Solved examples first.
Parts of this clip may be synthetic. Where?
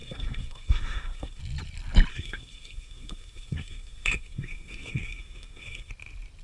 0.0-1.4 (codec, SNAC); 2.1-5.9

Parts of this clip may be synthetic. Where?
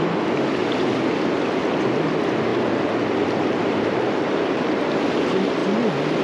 2.5-4.8 (vocoder, BigVGAN v2)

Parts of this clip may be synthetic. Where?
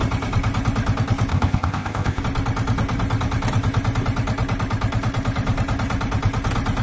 1.3-2.2 (codec, ZipCodec)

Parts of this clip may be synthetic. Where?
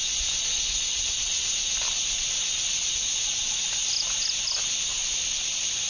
none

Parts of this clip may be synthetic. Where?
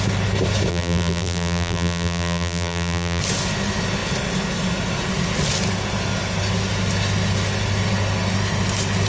0.7-3.2 (vocoder, BigVGAN v2)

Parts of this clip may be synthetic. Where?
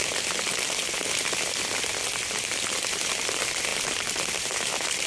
none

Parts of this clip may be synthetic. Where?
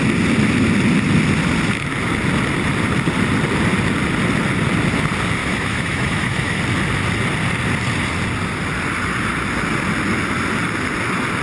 5.4-6.6 (autoencoder, DAC-VAE)